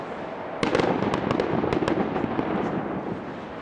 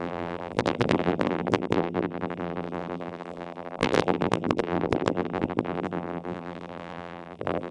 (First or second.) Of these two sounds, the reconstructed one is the second